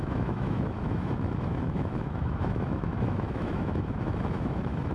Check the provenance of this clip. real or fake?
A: fake